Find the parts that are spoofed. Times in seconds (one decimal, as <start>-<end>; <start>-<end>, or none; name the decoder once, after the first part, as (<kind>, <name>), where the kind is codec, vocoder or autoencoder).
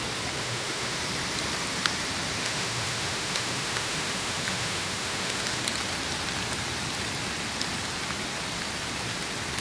0.4-1.0 (autoencoder, DAC-VAE); 2.4-5.6